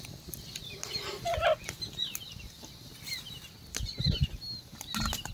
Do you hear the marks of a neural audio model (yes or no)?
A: no